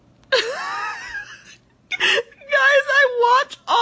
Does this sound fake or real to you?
real